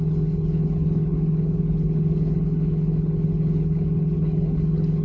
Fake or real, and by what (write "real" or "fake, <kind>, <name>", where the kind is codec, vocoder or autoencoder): fake, codec, HILCodec